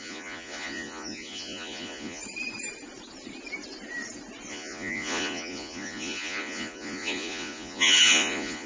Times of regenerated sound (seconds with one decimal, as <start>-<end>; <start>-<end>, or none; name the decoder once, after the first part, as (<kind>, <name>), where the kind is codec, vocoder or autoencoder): 0.0-2.2 (vocoder, Vocos); 4.5-8.7